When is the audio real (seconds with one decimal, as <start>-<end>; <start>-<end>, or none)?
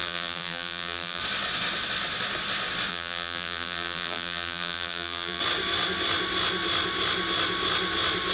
1.2-2.9; 5.4-8.3